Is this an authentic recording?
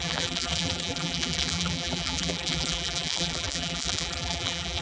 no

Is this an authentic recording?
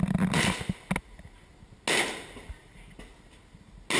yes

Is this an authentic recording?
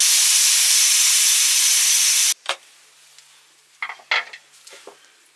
yes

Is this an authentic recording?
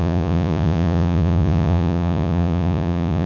no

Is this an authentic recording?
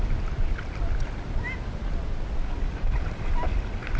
yes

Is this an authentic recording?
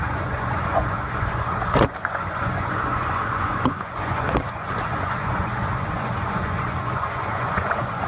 no